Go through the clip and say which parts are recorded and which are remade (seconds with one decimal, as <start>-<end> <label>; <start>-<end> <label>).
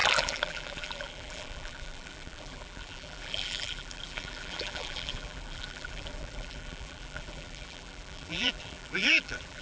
0.0-9.6 remade